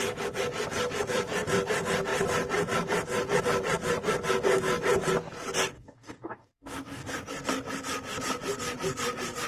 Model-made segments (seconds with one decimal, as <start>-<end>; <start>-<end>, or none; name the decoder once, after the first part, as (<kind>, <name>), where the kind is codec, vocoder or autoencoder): 5.7-7.3 (codec, DAC)